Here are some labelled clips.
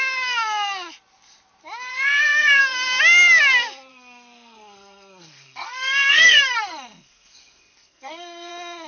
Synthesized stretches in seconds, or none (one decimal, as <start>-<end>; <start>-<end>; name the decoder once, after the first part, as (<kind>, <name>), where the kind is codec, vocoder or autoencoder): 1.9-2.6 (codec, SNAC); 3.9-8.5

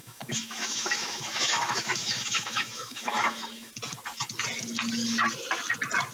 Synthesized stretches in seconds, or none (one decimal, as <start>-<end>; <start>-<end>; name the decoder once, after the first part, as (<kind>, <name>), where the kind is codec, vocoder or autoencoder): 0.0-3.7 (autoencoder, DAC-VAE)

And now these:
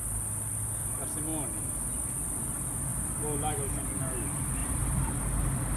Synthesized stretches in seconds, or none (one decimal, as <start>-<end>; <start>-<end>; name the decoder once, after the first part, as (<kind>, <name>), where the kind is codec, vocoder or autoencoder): 4.6-5.1 (vocoder, BigVGAN v2)

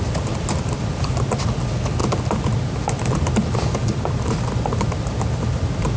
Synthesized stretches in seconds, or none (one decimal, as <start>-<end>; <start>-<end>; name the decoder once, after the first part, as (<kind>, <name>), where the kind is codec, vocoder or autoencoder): none

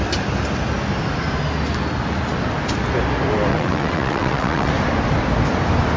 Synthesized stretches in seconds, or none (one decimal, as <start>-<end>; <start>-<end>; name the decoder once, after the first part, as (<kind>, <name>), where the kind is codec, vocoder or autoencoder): 3.5-4.7 (vocoder, WaveNeXt)